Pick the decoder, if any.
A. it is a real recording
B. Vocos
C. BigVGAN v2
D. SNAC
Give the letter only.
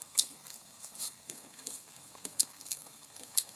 D